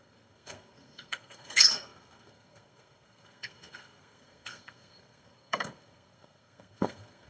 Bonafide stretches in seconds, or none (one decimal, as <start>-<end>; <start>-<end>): none